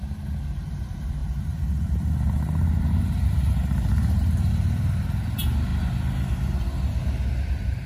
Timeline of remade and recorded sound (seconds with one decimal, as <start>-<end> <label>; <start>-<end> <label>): 0.0-5.7 remade; 5.7-7.5 recorded; 7.5-7.9 remade